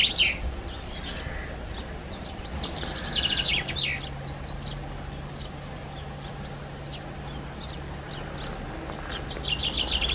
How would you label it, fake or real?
real